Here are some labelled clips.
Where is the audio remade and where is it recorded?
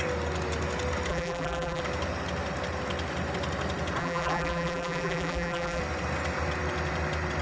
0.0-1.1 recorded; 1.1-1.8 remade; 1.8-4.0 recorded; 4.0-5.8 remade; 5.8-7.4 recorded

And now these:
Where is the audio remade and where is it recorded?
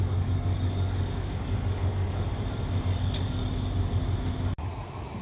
0.0-2.3 remade; 2.3-2.8 recorded; 2.8-3.4 remade; 3.4-5.2 recorded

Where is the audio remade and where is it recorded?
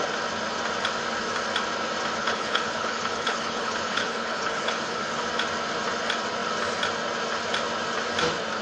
0.0-2.2 recorded; 2.2-5.2 remade; 5.2-8.6 recorded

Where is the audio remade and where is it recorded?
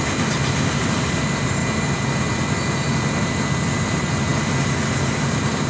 0.0-5.7 recorded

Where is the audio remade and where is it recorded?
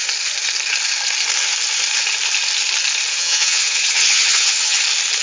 0.0-3.1 recorded; 3.1-4.8 remade; 4.8-5.2 recorded